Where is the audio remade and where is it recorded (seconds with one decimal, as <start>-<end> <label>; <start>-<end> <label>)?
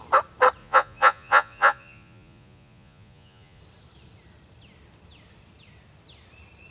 0.0-0.6 recorded; 0.6-3.6 remade; 3.6-6.7 recorded